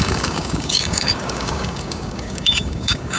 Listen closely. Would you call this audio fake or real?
fake